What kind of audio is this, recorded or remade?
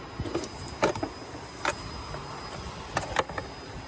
recorded